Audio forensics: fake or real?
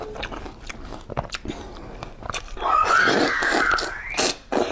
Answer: real